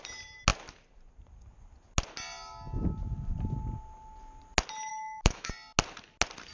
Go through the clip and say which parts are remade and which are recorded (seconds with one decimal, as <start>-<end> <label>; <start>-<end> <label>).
0.0-4.9 recorded; 4.9-5.5 remade; 5.5-6.5 recorded